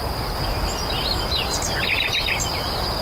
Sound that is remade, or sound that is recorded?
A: recorded